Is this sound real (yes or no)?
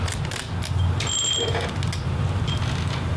yes